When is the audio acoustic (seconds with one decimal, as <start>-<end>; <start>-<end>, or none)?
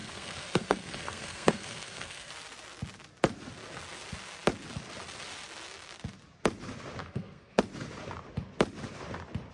2.3-7.0; 7.6-9.5